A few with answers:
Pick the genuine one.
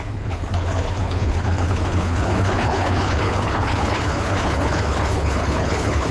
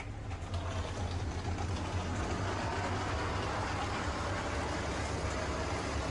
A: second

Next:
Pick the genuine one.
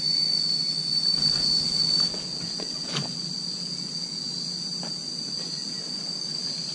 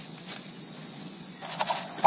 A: first